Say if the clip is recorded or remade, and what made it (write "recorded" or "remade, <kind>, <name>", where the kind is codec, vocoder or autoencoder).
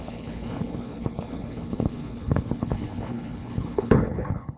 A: remade, codec, HILCodec